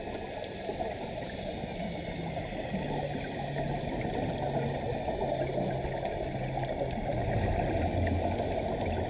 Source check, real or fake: real